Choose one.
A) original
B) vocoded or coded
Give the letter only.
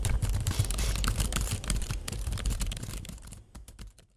B